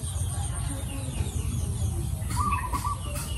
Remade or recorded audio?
recorded